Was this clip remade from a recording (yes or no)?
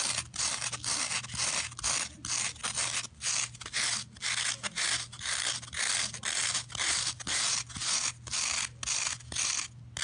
no